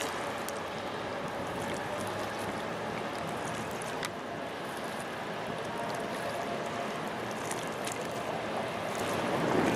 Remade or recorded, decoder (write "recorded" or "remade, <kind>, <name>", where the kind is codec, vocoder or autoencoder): recorded